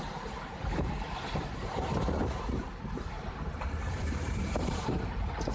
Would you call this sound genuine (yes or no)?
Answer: no